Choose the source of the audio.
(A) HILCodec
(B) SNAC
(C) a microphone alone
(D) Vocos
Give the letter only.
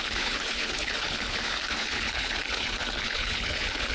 A